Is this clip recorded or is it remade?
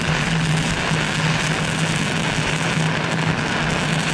recorded